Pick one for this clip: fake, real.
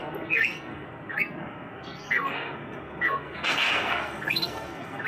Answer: fake